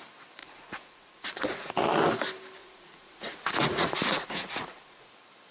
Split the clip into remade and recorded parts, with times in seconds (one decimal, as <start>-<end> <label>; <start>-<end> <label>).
0.0-0.4 recorded; 0.4-1.7 remade; 1.7-2.6 recorded; 2.6-5.1 remade; 5.1-5.5 recorded